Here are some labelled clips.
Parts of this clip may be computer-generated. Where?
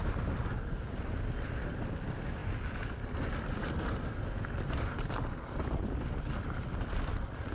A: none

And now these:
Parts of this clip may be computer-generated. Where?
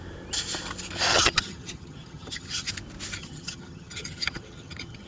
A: 1.1-2.7; 3.2-5.1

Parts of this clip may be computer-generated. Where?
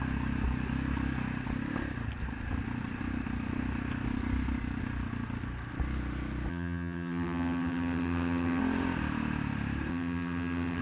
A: 6.5-8.6; 9.9-10.8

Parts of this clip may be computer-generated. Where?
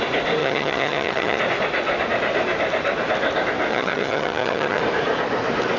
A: 0.4-1.4; 3.7-4.8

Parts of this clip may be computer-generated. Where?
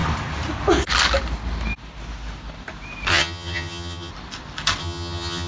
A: 3.1-4.1; 4.8-5.5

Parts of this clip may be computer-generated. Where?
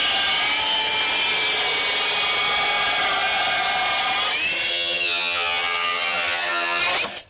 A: 4.7-6.8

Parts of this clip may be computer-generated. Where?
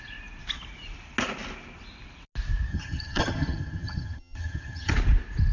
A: 2.7-4.9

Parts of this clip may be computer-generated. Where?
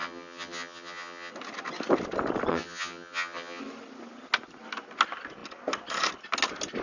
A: 0.0-1.3; 2.5-3.6